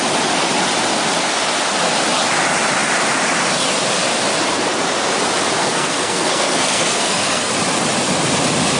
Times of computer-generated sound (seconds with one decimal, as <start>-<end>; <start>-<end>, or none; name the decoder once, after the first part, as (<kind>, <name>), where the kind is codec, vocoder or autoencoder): 5.6-7.5 (codec, SNAC)